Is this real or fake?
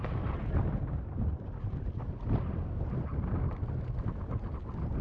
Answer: real